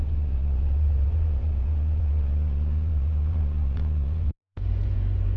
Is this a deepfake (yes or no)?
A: yes